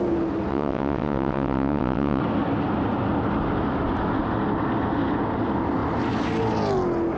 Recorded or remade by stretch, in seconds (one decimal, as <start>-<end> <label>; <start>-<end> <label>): 0.0-0.5 recorded; 0.5-2.2 remade; 2.2-7.2 recorded